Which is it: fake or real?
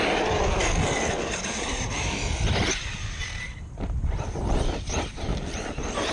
real